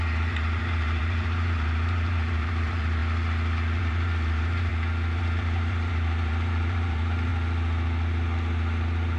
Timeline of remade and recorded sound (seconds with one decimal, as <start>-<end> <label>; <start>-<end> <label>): 0.0-3.0 remade; 3.0-3.8 recorded; 3.8-4.7 remade; 4.7-5.2 recorded; 5.2-7.3 remade; 7.3-9.2 recorded